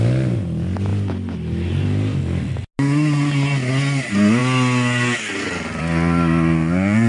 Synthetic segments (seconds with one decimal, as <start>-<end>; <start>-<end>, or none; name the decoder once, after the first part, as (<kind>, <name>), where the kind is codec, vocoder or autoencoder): none